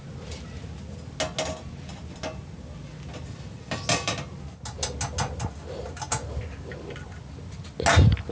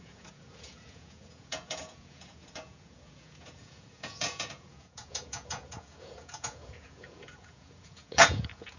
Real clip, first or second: first